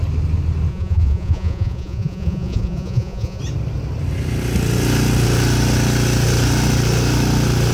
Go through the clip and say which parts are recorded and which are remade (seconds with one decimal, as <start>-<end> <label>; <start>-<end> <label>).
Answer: 0.0-0.7 recorded; 0.7-3.4 remade; 3.4-7.7 recorded